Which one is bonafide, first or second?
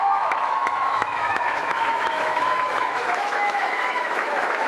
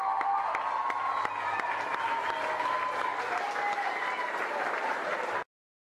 second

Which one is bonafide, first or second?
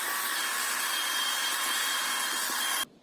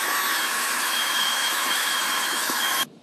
first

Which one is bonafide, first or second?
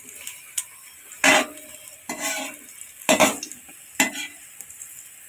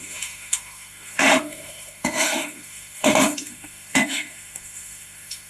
first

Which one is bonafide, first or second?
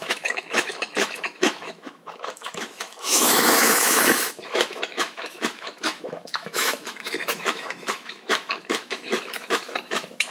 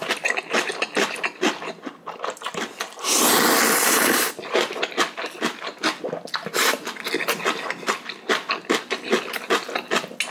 second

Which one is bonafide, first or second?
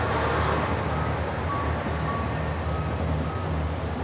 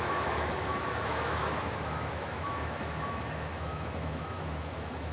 first